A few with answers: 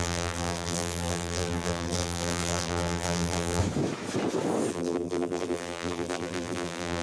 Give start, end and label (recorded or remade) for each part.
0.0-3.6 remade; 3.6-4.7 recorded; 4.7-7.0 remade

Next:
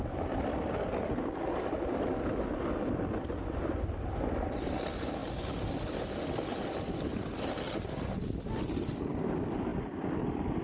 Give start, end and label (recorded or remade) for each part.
0.0-10.6 recorded